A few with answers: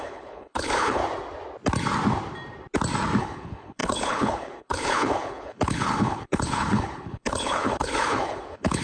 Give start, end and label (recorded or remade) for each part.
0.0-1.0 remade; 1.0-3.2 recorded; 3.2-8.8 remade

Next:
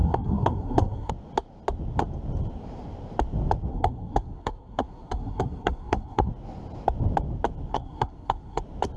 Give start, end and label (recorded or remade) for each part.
0.0-1.1 remade; 1.1-3.7 recorded; 3.7-6.3 remade; 6.3-7.7 recorded; 7.7-8.6 remade; 8.6-9.0 recorded

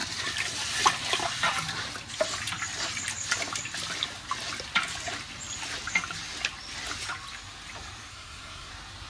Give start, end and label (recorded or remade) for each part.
0.0-8.1 recorded; 8.1-8.7 remade; 8.7-9.1 recorded

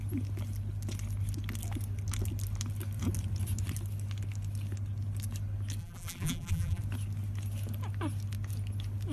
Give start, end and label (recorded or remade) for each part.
0.0-5.8 recorded; 5.8-6.8 remade; 6.8-9.1 recorded

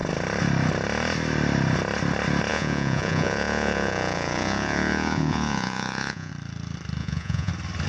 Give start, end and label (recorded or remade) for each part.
0.0-2.5 recorded; 2.5-6.3 remade; 6.3-7.0 recorded; 7.0-7.5 remade; 7.5-7.9 recorded